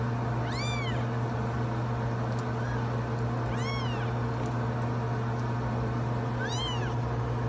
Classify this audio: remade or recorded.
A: recorded